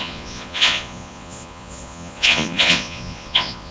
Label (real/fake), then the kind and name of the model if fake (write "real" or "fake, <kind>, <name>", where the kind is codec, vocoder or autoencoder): fake, vocoder, Vocos